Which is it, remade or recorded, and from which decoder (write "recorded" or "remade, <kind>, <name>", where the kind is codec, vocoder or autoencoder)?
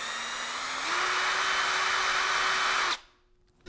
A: recorded